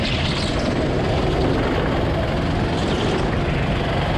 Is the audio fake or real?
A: real